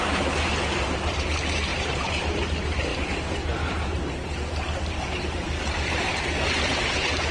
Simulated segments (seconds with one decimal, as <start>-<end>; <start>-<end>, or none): 1.7-2.4; 2.9-6.2